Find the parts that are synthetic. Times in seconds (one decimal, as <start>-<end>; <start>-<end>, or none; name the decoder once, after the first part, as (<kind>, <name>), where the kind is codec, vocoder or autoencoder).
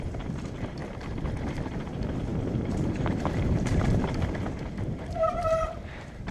0.0-0.8 (vocoder, BigVGAN v2); 1.3-6.3